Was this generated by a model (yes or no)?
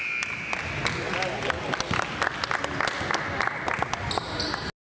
no